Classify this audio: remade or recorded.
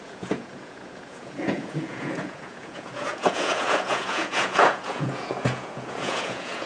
remade